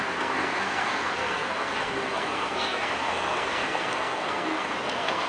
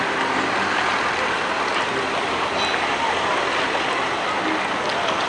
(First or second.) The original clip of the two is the second